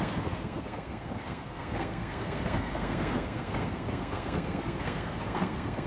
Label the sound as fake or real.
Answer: fake